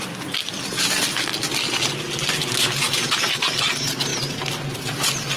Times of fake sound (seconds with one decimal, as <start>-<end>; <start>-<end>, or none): none